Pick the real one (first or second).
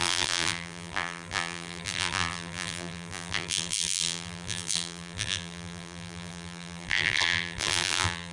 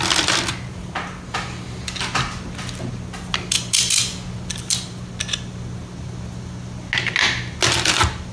second